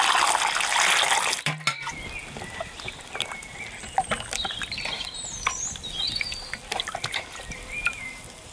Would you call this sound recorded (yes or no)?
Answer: yes